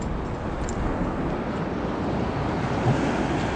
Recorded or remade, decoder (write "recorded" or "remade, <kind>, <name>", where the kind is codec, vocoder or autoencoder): recorded